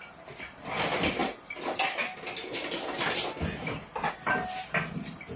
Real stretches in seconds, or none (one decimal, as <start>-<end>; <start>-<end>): 0.0-5.4